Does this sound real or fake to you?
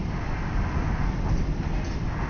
real